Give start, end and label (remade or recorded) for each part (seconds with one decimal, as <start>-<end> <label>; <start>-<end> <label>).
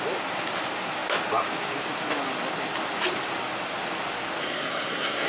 0.0-4.4 recorded; 4.4-5.3 remade